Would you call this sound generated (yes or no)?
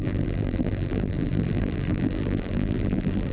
yes